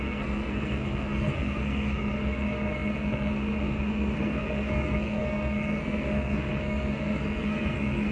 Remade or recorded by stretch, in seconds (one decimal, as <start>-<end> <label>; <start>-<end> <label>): 0.0-8.1 remade

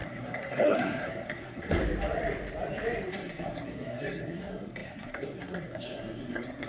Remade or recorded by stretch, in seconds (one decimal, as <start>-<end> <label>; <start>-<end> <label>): 0.0-1.8 remade; 1.8-3.1 recorded; 3.1-6.7 remade

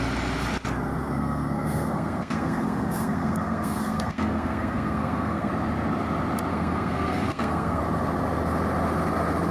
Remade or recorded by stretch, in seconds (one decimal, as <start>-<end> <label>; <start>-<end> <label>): 0.0-1.0 recorded; 1.0-5.5 remade; 5.5-6.5 recorded; 6.5-7.8 remade; 7.8-9.5 recorded

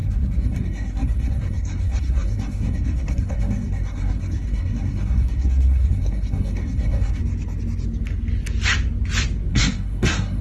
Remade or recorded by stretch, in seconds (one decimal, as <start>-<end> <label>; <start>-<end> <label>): 0.0-7.2 remade; 7.2-9.5 recorded; 9.5-10.4 remade

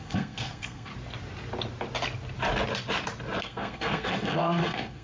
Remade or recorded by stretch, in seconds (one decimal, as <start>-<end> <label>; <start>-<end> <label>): 0.0-0.9 remade; 0.9-3.4 recorded; 3.4-5.0 remade